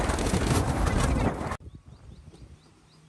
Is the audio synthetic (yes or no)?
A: no